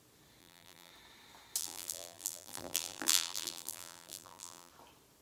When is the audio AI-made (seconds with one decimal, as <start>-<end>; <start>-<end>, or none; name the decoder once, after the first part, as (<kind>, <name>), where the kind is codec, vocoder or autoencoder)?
0.4-0.9 (vocoder, BigVGAN v2); 1.6-4.7